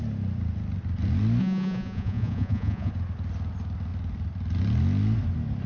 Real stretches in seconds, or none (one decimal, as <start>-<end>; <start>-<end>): 0.0-1.4; 2.9-5.7